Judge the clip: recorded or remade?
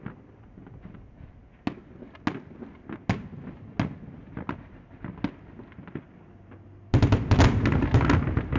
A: recorded